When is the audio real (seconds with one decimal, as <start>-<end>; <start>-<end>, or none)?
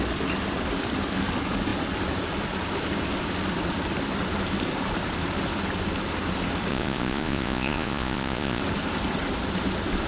0.0-6.7; 8.6-10.1